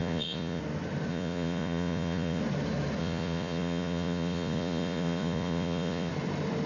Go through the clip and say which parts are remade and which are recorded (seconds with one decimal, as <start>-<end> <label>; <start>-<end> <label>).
0.0-0.6 remade; 0.6-1.1 recorded; 1.1-2.4 remade; 2.4-3.0 recorded; 3.0-6.1 remade; 6.1-6.7 recorded